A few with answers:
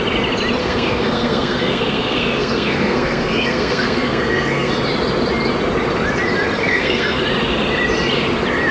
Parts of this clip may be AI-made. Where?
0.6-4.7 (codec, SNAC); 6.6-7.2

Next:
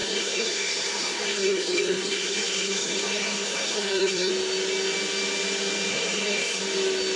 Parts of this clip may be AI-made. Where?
0.0-4.3 (codec, SNAC); 5.9-6.6

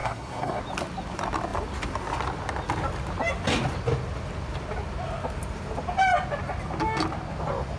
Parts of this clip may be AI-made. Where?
0.0-0.6 (codec, SNAC)

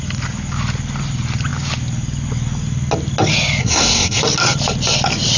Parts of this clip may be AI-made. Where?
3.6-4.2 (codec, SNAC)

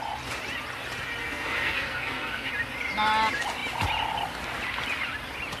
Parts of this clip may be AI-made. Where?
1.2-2.5 (codec, SNAC)

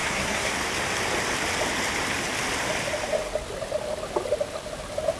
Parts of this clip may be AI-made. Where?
0.0-0.5 (codec, SNAC)

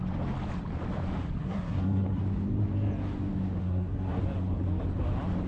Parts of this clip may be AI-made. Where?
1.4-2.2 (codec, SNAC); 3.6-4.2

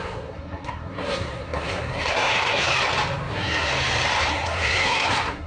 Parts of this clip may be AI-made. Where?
0.0-2.7 (codec, SNAC); 3.3-3.7; 4.3-5.5